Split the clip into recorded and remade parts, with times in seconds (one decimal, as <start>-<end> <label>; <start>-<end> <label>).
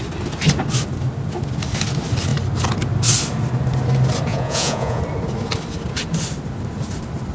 0.0-4.3 recorded; 4.3-5.0 remade; 5.0-7.3 recorded